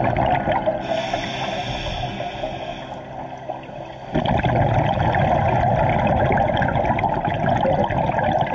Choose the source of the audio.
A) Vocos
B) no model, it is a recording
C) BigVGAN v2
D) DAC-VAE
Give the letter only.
B